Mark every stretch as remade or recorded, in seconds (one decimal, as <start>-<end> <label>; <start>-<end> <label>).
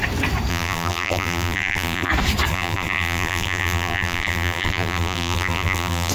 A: 0.0-0.5 recorded; 0.5-2.1 remade; 2.1-2.5 recorded; 2.5-6.1 remade